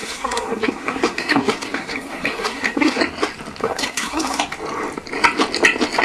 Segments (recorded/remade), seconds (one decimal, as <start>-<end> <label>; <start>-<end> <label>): 0.0-3.0 remade; 3.0-3.6 recorded; 3.6-4.4 remade; 4.4-6.0 recorded